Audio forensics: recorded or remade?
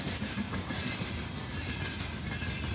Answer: recorded